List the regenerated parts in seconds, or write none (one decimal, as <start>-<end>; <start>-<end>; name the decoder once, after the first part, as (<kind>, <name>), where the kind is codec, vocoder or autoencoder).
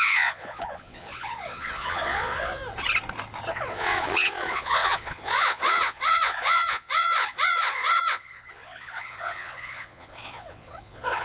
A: 0.0-2.6 (vocoder, Vocos); 3.5-11.2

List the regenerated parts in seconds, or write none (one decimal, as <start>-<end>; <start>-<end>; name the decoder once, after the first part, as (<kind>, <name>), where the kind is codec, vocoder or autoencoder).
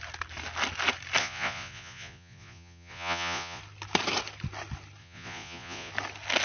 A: 1.2-3.6 (vocoder, Vocos); 5.0-5.9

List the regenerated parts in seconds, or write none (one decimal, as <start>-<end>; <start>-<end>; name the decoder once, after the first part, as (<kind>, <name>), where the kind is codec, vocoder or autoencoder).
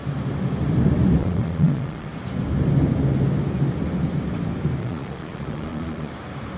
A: 1.2-2.1 (vocoder, Vocos); 4.8-6.1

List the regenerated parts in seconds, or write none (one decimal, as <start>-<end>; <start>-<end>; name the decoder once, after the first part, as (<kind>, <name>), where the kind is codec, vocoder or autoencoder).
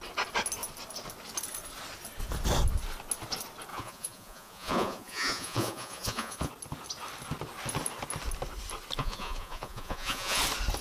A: 3.7-6.5 (vocoder, Vocos); 9.0-10.4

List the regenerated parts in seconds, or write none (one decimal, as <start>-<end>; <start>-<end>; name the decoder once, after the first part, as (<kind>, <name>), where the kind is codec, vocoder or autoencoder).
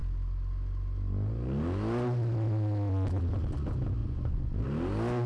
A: 4.0-4.6 (vocoder, Vocos)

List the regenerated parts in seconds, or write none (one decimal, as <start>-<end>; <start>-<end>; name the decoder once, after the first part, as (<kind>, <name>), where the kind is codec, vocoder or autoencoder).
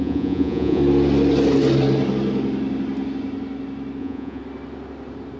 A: 0.0-0.8 (vocoder, Vocos); 4.0-4.4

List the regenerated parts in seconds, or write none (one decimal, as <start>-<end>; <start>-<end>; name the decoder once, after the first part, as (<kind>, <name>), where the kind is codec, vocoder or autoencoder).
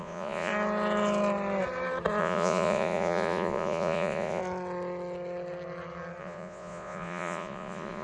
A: 0.0-0.5 (vocoder, Vocos); 2.2-4.4; 6.2-8.0